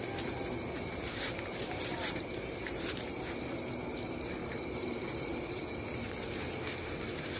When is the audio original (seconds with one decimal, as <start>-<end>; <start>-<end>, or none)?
0.0-0.7; 3.6-4.4